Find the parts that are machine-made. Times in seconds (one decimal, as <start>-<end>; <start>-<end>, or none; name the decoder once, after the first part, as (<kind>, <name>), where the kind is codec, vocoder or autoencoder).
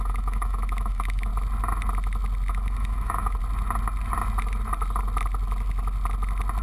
0.0-1.3 (autoencoder, DAC-VAE); 2.5-3.4